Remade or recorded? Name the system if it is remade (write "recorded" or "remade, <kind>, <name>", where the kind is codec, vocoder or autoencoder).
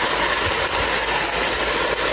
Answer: recorded